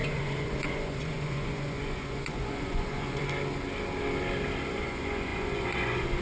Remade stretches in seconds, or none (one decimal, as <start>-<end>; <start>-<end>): 0.0-3.2; 4.7-6.2